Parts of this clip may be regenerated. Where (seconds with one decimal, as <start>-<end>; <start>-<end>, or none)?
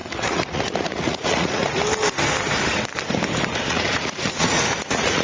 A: 0.0-1.6; 3.7-5.2